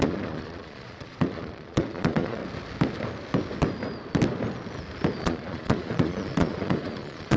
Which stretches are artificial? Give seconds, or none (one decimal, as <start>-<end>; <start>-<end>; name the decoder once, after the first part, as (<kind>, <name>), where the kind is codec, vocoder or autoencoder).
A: 0.0-2.4 (vocoder, Vocos); 5.2-7.4